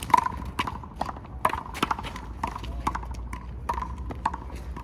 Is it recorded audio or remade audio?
recorded